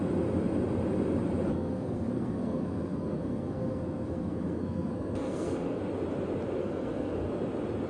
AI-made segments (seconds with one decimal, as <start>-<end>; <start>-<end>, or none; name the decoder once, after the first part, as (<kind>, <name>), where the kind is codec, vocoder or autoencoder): 1.5-5.8 (codec, SNAC); 6.6-7.3